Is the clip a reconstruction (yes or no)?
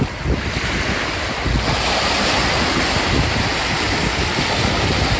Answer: no